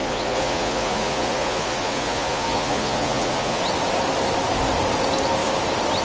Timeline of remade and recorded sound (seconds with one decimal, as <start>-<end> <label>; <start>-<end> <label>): 0.0-3.6 remade; 3.6-6.0 recorded